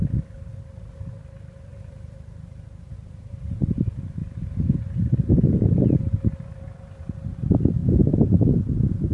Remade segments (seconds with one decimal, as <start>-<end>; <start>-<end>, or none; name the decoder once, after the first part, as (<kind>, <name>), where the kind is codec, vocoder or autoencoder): 1.7-3.8 (vocoder, BigVGAN v2); 4.2-6.0; 7.8-8.7